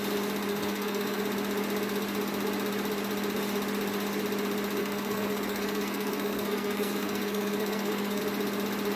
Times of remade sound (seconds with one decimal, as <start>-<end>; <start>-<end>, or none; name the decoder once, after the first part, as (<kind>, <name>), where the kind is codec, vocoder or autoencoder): 0.5-1.2 (codec, SNAC); 4.8-8.2